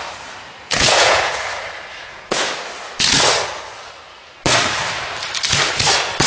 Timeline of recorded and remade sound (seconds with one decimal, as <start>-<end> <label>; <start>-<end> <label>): 0.0-0.6 recorded; 0.6-1.4 remade; 1.4-2.0 recorded; 2.0-2.5 remade; 2.5-6.3 recorded